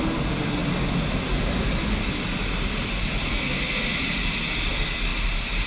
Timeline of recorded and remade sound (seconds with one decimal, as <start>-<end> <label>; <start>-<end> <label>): 0.0-5.7 recorded